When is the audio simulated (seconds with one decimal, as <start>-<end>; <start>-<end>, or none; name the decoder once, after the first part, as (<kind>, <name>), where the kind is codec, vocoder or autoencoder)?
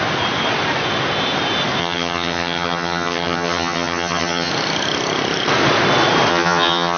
1.8-4.5 (vocoder, HiFi-GAN); 6.3-7.0